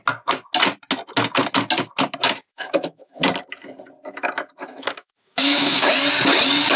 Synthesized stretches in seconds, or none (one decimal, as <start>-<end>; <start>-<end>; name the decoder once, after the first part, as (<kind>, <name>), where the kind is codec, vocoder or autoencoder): 2.5-3.2 (autoencoder, DAC-VAE); 4.7-5.9